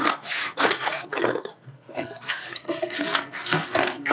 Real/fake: fake